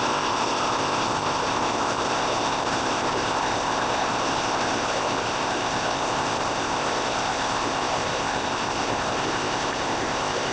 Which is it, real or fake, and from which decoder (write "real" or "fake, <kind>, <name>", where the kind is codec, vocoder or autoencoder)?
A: fake, codec, ZipCodec